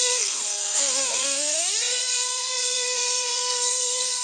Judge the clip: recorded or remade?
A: remade